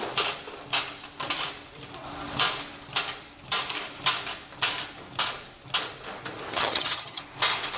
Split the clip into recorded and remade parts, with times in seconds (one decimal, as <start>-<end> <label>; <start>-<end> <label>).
0.0-6.5 recorded; 6.5-7.2 remade; 7.2-7.8 recorded